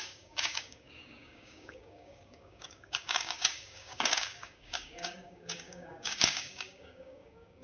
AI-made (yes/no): yes